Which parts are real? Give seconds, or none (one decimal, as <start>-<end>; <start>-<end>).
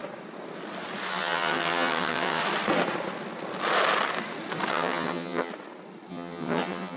0.0-1.1; 2.4-4.7; 5.5-6.1